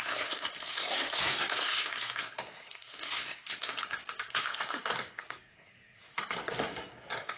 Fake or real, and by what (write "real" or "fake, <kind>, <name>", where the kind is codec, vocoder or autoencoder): fake, codec, SNAC